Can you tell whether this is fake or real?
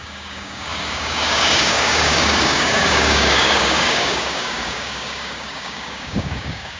fake